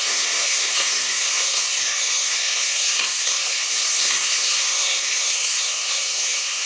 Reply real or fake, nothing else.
fake